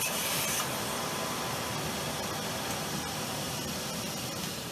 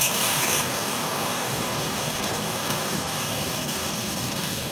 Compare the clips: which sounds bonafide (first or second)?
first